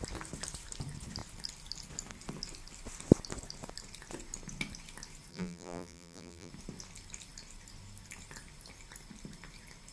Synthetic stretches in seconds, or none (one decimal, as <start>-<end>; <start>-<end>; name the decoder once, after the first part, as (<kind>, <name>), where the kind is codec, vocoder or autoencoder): 5.3-6.5 (vocoder, BigVGAN v2)